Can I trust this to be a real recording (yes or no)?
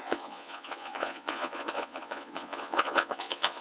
no